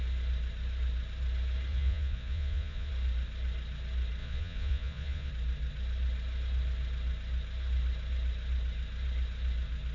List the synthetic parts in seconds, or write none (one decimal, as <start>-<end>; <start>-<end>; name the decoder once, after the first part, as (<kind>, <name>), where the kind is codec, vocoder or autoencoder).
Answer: 1.7-2.9 (vocoder, Vocos); 4.2-5.3